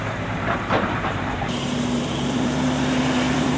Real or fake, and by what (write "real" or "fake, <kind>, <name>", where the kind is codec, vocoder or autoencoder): fake, vocoder, BigVGAN v2